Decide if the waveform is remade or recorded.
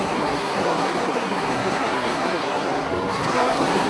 remade